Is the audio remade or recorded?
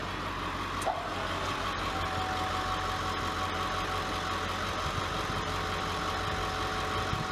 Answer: recorded